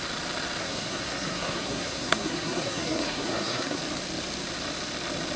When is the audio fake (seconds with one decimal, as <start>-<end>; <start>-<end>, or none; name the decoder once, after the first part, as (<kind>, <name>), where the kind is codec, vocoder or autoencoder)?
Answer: 0.6-3.8 (codec, SNAC)